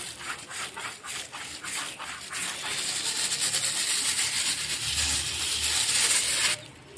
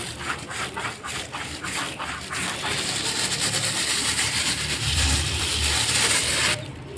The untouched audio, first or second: first